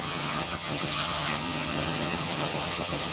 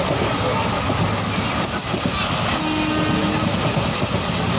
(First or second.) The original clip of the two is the second